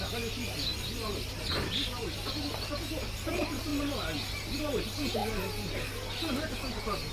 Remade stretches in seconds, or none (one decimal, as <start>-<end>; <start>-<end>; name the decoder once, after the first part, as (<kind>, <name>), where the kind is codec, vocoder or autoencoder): none